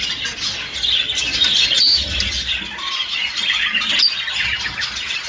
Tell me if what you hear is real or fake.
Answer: real